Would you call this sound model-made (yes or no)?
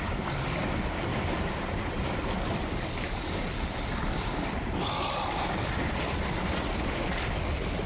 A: yes